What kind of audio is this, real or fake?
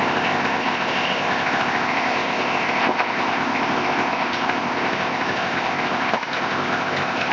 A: fake